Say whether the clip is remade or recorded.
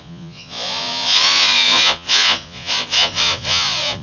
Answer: remade